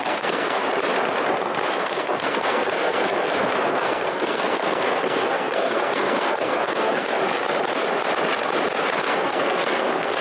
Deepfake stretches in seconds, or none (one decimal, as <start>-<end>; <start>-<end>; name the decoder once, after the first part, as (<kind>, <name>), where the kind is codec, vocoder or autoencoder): 0.0-0.6 (codec, SNAC); 1.7-7.2; 8.8-10.2